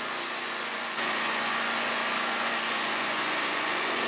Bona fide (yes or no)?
no